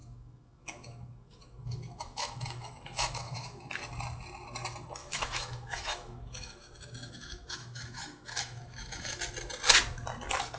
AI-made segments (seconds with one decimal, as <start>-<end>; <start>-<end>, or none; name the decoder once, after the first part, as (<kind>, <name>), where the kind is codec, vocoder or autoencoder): 0.0-3.7 (autoencoder, DAC-VAE); 5.0-9.2